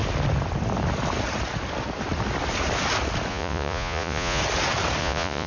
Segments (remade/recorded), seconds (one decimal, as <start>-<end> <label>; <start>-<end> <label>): 0.0-3.3 recorded; 3.3-4.4 remade; 4.4-5.0 recorded; 5.0-5.5 remade